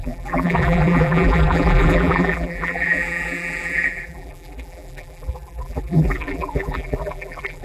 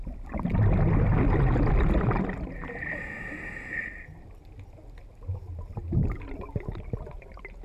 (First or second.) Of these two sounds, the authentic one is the second